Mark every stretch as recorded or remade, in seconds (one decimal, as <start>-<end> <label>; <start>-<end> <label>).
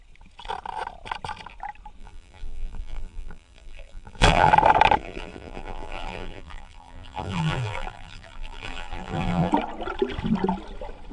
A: 0.0-2.0 recorded; 2.0-4.5 remade; 4.5-5.0 recorded; 5.0-9.5 remade; 9.5-11.1 recorded